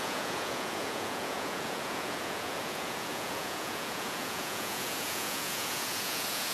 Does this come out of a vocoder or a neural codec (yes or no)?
yes